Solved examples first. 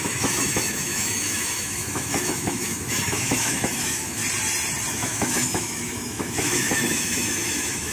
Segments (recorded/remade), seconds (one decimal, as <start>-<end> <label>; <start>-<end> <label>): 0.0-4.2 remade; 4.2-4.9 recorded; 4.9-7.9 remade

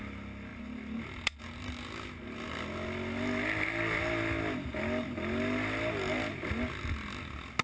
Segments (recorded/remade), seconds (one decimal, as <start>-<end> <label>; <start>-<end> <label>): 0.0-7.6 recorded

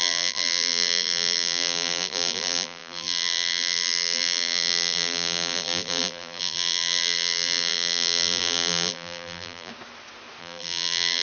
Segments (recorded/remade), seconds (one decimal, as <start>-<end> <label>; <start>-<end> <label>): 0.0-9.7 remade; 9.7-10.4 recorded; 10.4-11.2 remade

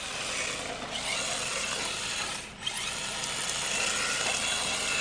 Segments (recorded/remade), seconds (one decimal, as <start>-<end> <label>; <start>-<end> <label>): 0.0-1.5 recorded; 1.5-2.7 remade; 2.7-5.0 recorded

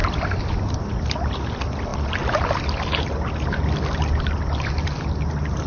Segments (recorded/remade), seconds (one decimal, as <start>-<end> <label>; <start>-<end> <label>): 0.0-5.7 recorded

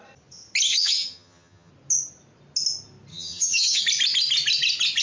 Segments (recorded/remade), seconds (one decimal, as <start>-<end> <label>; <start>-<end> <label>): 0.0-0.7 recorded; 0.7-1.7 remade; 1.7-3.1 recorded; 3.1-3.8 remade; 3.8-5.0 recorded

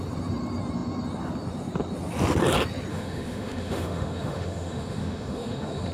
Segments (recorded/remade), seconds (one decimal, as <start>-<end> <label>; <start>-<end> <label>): 0.0-2.9 recorded; 2.9-5.9 remade